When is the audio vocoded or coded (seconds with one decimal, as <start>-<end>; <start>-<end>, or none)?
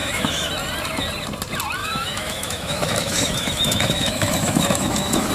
0.0-0.5; 1.8-5.3